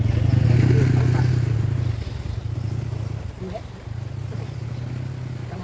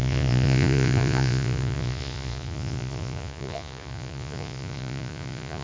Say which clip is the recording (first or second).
first